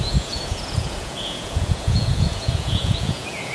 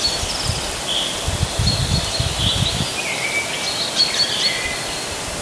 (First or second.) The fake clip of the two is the first